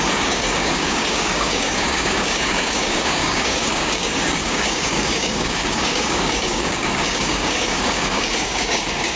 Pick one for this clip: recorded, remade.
remade